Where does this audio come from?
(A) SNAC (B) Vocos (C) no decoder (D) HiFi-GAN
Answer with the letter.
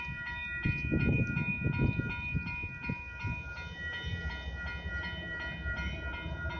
C